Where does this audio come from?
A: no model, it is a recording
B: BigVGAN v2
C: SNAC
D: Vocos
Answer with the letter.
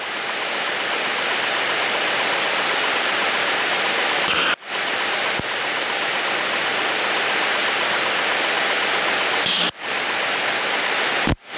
A